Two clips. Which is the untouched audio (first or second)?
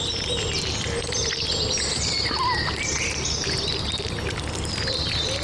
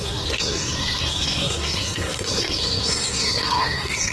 first